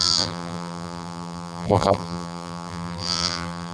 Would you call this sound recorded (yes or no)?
no